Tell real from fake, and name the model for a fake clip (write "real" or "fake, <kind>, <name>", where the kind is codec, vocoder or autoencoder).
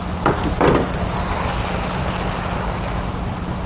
real